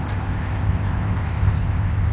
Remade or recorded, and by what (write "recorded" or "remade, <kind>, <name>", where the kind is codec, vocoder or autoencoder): remade, codec, ZipCodec